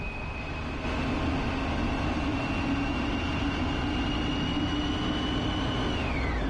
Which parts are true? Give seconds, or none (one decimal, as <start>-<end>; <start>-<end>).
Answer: 0.0-6.5

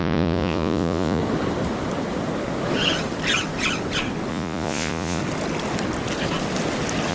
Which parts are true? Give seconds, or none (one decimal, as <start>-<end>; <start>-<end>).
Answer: 1.2-4.3; 5.2-7.1

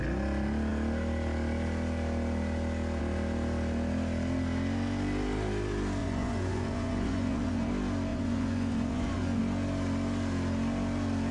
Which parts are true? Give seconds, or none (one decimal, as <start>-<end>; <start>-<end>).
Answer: 0.0-6.0; 7.7-8.1; 9.4-11.3

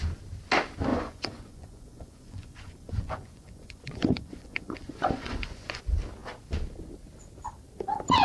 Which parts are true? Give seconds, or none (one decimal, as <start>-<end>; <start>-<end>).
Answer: 0.0-0.9; 5.8-8.2

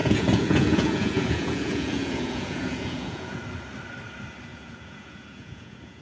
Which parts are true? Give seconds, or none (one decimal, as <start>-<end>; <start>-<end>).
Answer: 3.4-4.5

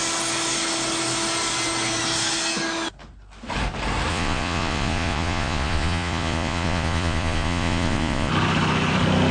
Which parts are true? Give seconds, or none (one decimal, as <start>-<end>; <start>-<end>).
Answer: 0.0-4.1; 8.3-9.3

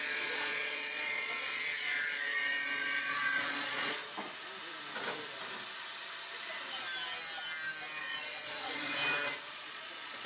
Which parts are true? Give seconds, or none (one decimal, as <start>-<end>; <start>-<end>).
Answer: 4.0-8.0; 9.0-9.5